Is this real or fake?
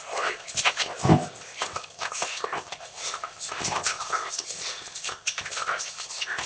fake